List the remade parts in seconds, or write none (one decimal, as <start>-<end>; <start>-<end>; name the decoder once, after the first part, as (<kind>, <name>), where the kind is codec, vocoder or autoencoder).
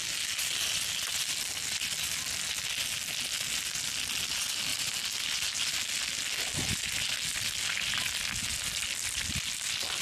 none